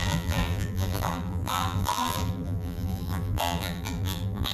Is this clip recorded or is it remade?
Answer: remade